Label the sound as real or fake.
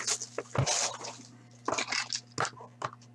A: real